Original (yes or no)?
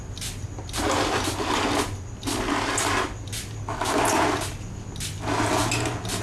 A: yes